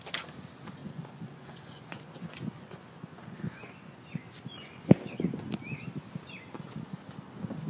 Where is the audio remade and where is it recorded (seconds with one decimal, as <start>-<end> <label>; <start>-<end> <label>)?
0.0-0.8 recorded; 0.8-5.4 remade; 5.4-7.7 recorded

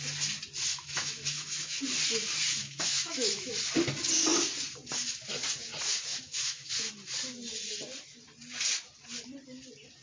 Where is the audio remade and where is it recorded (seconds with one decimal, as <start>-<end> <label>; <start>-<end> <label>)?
0.0-0.7 recorded; 0.7-1.8 remade; 1.8-2.6 recorded; 2.6-3.5 remade; 3.5-6.1 recorded; 6.1-6.7 remade; 6.7-10.0 recorded

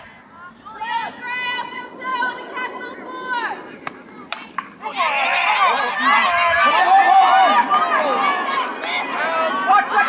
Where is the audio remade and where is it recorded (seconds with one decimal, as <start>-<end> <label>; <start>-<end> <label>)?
0.0-10.1 recorded

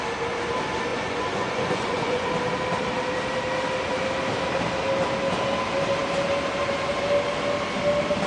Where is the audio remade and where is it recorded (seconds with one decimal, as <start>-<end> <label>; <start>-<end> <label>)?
0.0-0.9 recorded; 0.9-2.3 remade; 2.3-8.3 recorded

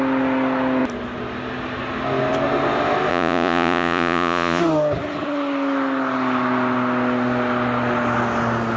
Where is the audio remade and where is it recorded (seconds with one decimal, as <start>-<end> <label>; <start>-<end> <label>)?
0.0-3.1 recorded; 3.1-4.6 remade; 4.6-8.8 recorded

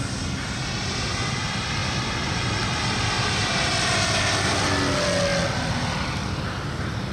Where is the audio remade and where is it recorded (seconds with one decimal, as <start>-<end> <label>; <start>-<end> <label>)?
0.0-7.1 recorded